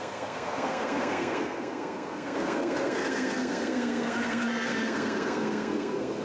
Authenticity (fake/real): fake